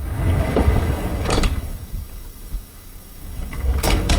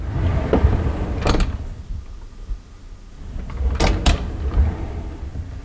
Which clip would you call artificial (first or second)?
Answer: first